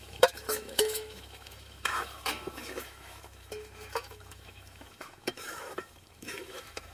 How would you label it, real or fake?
fake